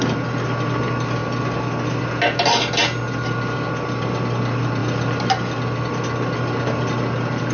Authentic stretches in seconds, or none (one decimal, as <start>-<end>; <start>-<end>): 0.0-7.5